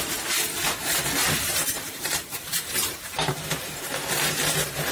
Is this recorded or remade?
remade